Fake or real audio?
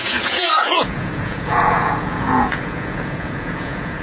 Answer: fake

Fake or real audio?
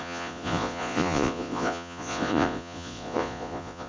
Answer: fake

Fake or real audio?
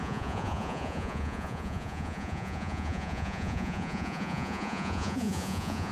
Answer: fake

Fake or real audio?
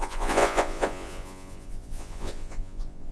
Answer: fake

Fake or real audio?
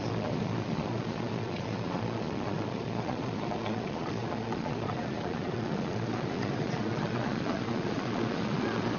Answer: fake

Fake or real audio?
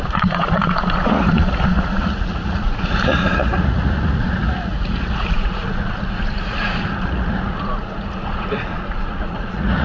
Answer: fake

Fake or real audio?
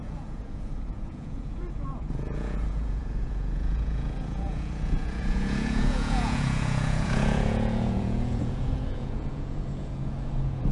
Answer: fake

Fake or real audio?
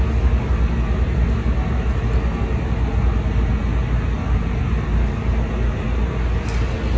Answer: real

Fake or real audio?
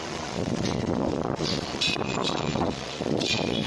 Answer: fake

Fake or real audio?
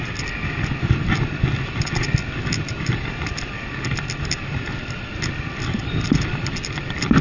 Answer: real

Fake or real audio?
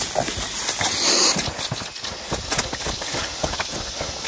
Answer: real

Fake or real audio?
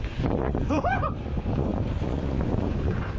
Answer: fake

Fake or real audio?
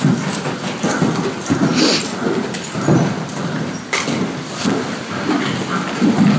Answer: real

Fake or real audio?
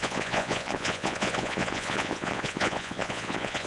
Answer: fake